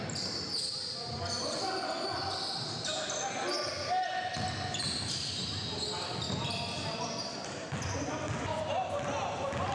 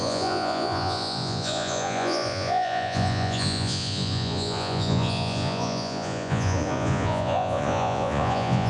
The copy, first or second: second